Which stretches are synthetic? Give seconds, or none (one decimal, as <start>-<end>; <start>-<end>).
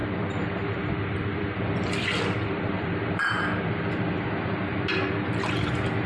0.0-3.7